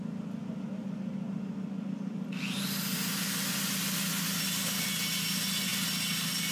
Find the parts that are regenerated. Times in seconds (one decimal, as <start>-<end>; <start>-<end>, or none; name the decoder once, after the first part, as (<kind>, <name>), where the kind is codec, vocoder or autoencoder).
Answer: none